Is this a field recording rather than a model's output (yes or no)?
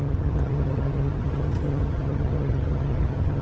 no